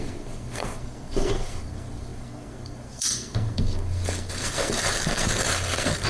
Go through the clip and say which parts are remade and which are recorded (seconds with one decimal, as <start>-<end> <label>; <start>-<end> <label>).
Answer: 0.0-6.1 remade